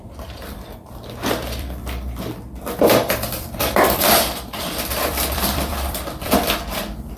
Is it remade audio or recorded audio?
remade